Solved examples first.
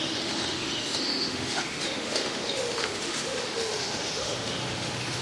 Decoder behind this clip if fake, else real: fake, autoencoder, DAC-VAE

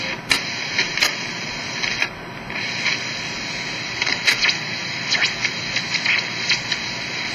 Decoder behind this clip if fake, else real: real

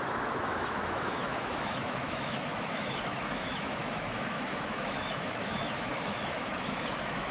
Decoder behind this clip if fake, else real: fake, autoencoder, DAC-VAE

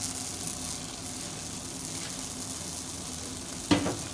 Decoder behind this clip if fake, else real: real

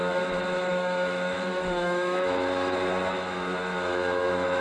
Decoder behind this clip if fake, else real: fake, autoencoder, DAC-VAE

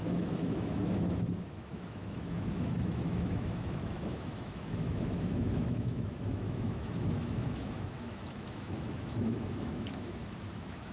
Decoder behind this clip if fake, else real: fake, autoencoder, DAC-VAE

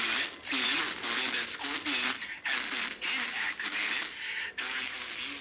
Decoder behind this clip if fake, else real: real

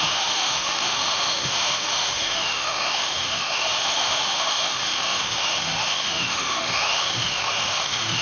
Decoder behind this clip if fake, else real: fake, autoencoder, DAC-VAE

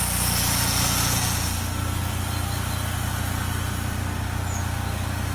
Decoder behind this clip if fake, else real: real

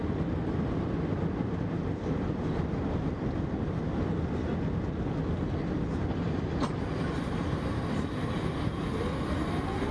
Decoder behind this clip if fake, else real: real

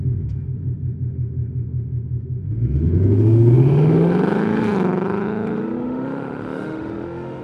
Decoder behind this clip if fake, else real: fake, autoencoder, DAC-VAE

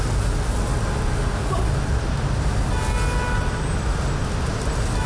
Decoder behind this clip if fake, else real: real